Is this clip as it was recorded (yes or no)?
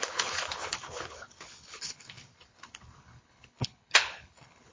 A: no